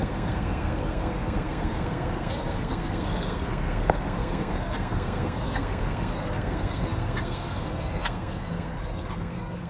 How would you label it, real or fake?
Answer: fake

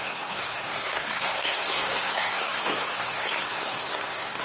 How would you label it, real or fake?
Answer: fake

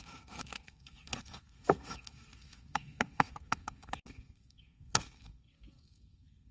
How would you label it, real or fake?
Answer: fake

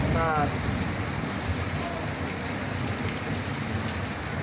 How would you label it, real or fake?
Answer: real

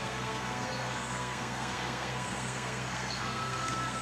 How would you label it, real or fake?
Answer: fake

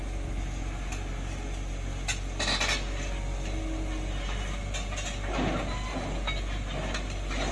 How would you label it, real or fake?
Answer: real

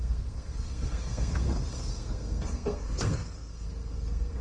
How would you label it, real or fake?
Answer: fake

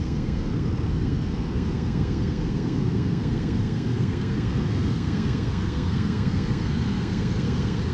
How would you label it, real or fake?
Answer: fake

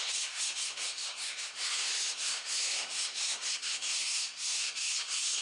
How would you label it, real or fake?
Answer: fake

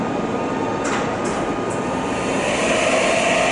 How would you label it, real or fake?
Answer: real